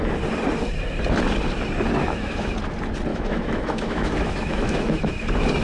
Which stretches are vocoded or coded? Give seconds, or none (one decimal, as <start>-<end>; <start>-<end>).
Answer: 2.0-2.5; 3.1-5.1

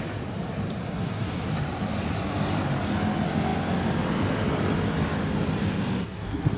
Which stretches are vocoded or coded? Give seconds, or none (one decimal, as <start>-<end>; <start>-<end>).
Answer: 0.8-1.5; 6.0-6.6

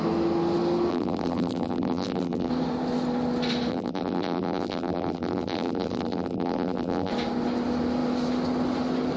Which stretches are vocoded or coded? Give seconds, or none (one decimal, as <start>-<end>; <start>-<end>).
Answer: 0.9-2.5; 3.7-7.1

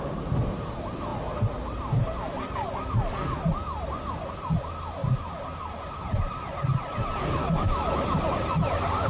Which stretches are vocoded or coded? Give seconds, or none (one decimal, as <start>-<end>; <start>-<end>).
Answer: 7.4-8.0

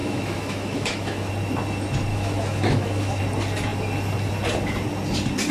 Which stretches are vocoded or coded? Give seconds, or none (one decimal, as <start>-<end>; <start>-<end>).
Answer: 0.0-1.3; 2.1-3.2